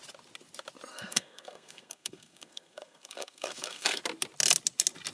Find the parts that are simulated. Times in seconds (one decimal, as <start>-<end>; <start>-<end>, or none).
0.9-4.0